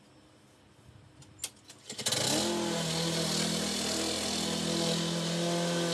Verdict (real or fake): real